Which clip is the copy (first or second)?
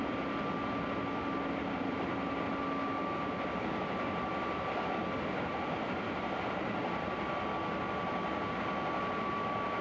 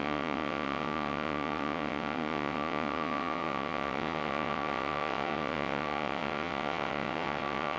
second